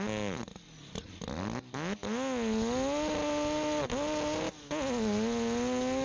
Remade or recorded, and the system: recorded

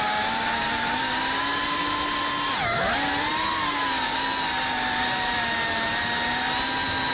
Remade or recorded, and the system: recorded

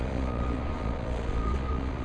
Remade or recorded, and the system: remade, vocoder, Vocos